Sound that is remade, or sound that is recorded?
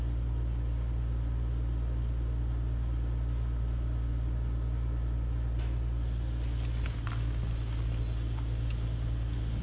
recorded